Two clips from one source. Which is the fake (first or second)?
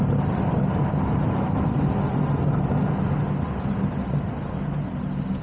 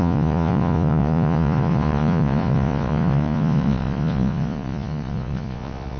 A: second